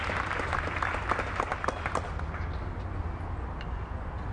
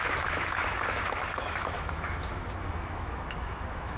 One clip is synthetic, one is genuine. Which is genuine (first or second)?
first